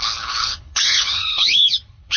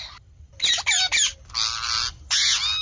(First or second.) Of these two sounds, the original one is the second